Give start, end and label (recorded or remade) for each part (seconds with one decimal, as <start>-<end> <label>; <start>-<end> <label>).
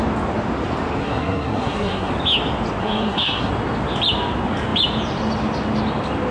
0.0-1.0 recorded; 1.0-2.1 remade; 2.1-2.8 recorded; 2.8-3.5 remade; 3.5-6.3 recorded